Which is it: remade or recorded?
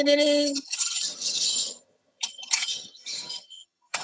remade